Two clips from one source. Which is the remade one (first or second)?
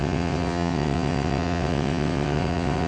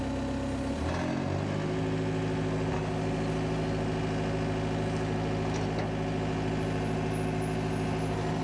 first